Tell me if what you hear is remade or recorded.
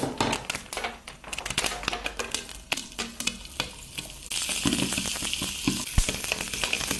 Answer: recorded